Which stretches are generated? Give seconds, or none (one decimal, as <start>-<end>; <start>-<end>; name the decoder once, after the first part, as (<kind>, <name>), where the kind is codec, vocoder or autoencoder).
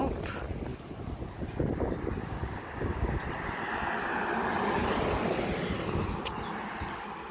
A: 2.2-3.1 (codec, DAC)